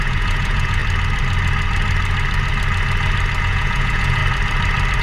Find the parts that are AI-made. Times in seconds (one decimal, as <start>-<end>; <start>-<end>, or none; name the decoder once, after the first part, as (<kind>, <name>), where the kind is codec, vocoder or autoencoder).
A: 0.0-0.8 (vocoder, Vocos); 3.4-4.2